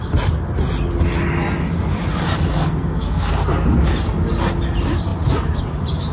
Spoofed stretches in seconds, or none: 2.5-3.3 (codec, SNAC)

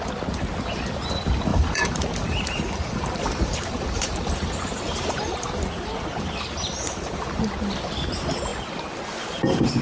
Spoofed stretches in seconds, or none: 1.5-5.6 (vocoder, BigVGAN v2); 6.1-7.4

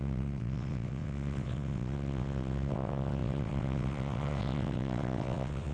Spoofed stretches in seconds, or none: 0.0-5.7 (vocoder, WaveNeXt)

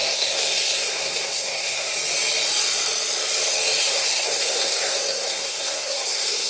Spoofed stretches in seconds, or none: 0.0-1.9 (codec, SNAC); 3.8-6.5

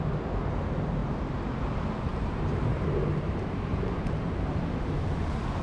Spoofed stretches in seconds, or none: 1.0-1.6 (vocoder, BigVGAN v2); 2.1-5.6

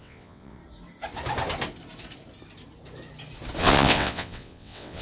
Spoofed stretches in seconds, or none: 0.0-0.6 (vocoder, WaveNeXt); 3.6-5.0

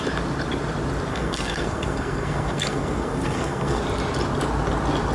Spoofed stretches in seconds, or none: 1.1-3.8 (codec, SNAC)

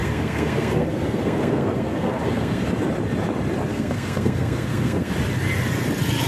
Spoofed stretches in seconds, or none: 0.0-2.6 (codec, SNAC); 3.7-5.1